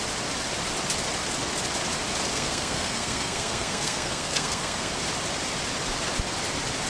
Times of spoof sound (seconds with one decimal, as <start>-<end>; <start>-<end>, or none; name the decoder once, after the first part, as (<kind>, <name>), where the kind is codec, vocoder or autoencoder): 2.3-4.9 (codec, SNAC)